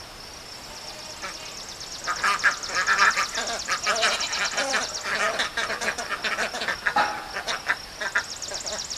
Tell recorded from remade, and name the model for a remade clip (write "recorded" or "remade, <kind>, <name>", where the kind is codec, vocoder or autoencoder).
recorded